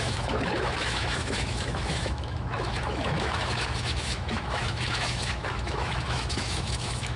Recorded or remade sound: remade